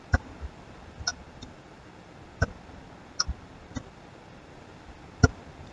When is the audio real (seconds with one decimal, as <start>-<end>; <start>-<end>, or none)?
0.0-5.7